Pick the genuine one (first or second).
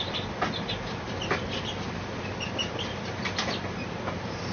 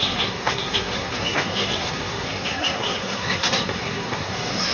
first